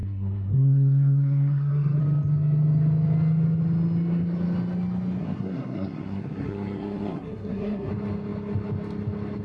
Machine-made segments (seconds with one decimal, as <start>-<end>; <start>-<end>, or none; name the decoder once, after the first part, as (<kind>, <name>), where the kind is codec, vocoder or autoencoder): 0.0-2.0 (codec, SNAC); 5.2-7.9